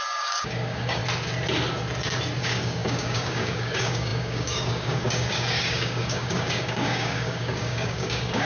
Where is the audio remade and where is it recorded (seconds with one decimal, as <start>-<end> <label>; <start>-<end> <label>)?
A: 0.0-1.0 remade; 1.0-2.4 recorded; 2.4-8.4 remade